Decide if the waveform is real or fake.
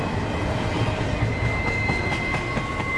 real